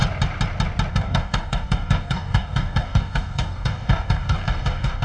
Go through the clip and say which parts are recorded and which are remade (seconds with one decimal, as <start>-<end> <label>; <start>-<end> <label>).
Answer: 0.0-0.9 recorded; 0.9-5.0 remade